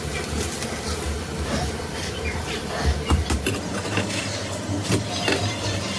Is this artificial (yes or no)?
no